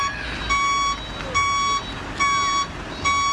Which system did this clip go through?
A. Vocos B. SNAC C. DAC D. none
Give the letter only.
D